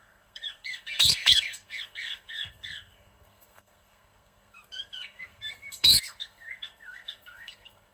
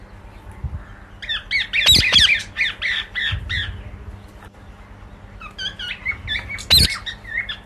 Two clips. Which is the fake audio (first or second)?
first